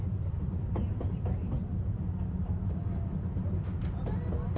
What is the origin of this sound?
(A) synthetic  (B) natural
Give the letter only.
B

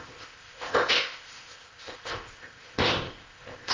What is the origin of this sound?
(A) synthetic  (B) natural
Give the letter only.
A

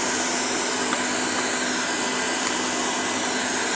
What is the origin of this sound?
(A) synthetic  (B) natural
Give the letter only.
B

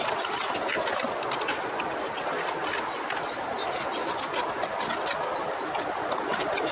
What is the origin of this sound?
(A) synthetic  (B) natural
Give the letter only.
B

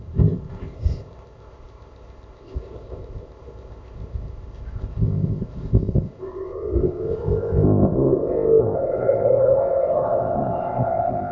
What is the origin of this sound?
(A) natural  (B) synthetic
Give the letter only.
B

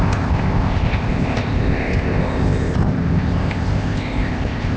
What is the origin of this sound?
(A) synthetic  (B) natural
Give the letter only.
A